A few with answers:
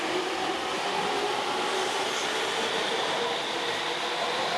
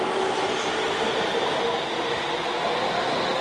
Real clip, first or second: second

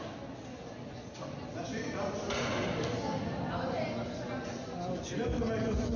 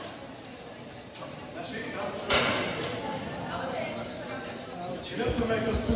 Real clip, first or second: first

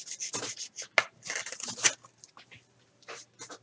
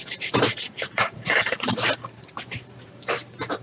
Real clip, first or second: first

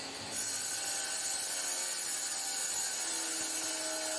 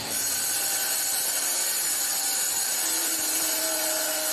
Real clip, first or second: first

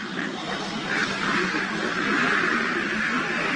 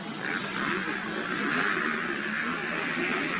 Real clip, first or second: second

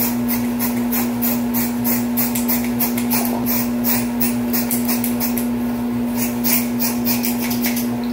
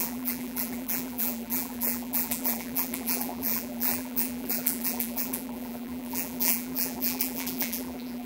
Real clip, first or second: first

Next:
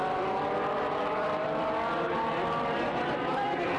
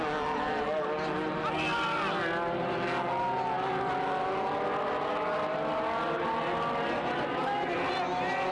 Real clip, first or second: second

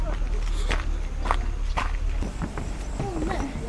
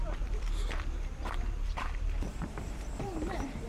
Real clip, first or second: first